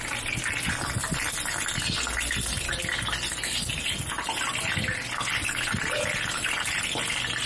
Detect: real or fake real